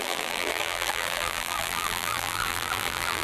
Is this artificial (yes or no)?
yes